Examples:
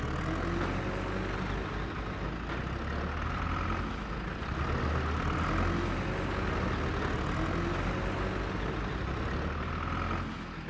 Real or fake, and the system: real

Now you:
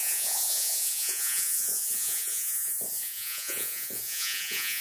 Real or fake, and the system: fake, vocoder, Vocos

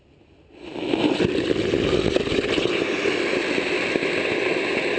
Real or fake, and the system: real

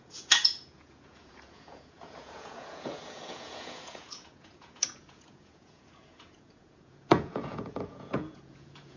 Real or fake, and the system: fake, vocoder, Vocos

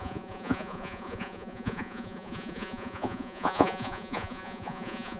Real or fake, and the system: fake, vocoder, Vocos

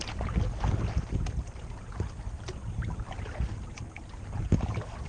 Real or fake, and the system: real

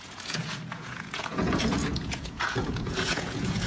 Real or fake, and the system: fake, vocoder, Vocos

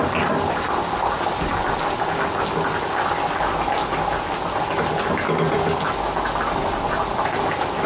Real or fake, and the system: real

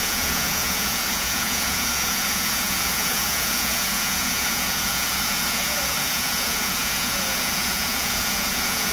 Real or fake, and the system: fake, vocoder, Vocos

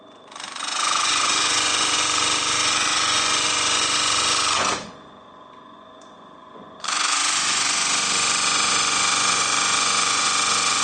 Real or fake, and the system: fake, vocoder, Vocos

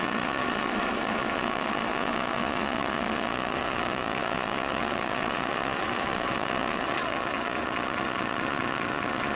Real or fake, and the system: fake, vocoder, Vocos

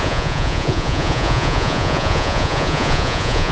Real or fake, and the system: fake, vocoder, Vocos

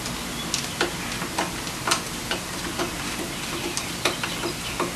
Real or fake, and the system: real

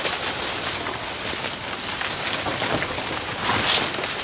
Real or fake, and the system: real